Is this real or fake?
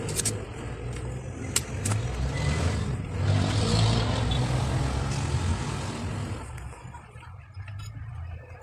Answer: real